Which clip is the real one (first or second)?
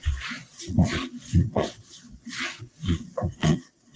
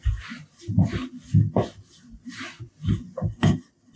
second